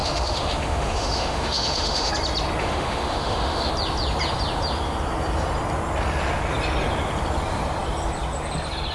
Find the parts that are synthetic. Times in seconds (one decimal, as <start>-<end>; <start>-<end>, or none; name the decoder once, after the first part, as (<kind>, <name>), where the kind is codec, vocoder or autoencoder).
0.0-2.1 (autoencoder, DAC-VAE); 2.6-3.7